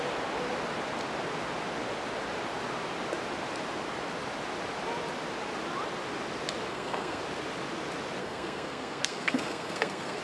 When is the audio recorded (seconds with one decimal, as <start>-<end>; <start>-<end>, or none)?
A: 0.0-6.7; 7.2-8.2